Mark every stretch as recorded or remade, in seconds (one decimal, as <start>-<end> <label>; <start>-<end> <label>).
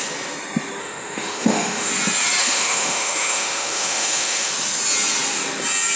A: 0.0-0.8 recorded; 0.8-1.9 remade; 1.9-2.4 recorded; 2.4-4.5 remade; 4.5-6.0 recorded